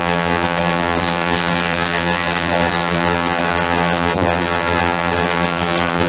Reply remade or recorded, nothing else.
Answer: remade